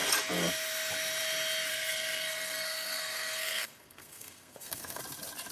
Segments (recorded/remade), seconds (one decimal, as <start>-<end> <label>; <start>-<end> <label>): 0.0-1.7 recorded; 1.7-5.0 remade; 5.0-5.5 recorded